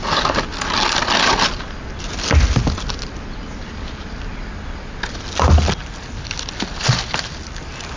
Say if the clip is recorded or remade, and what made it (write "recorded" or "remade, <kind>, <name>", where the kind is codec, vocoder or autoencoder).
recorded